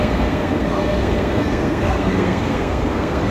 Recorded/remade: remade